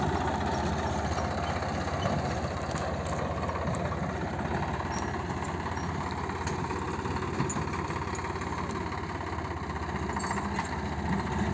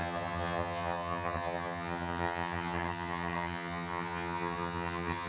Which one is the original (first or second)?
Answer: first